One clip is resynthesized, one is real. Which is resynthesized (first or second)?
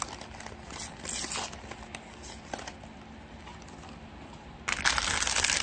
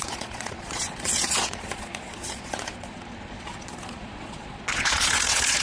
second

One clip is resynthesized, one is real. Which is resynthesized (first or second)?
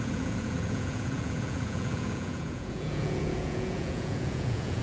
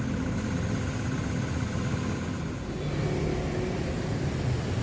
first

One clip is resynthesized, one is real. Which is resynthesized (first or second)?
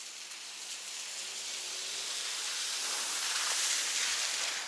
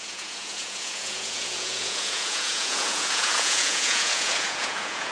second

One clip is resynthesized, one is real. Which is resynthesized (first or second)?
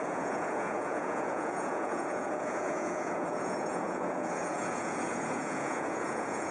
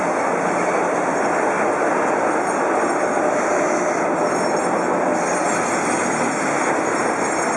first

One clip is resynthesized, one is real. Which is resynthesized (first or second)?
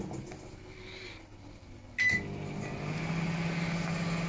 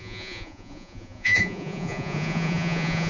second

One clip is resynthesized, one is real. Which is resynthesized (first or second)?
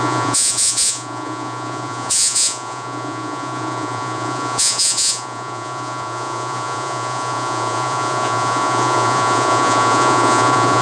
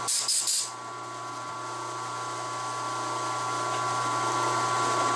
first